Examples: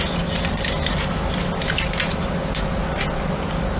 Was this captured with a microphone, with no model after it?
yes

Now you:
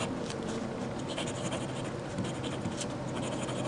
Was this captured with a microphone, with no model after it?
yes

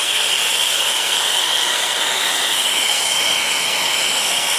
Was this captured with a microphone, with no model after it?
no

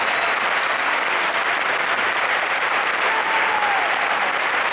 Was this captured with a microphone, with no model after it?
yes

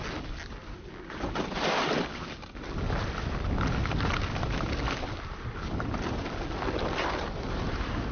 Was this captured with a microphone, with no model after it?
yes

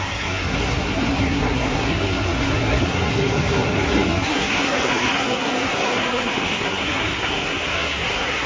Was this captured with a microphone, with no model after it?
no